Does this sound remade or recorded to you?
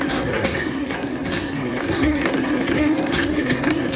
remade